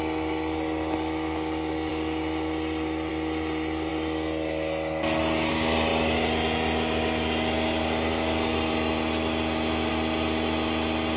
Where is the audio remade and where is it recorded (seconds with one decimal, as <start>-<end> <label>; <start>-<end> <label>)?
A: 0.0-11.2 recorded